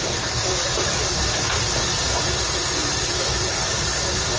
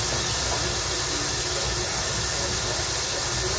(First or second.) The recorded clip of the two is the second